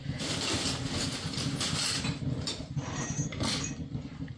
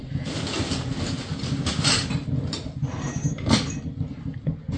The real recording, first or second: second